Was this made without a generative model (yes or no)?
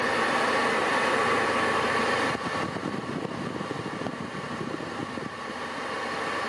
yes